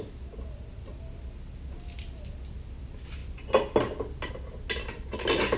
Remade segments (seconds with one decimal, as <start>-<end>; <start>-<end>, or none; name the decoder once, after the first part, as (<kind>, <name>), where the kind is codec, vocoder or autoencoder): none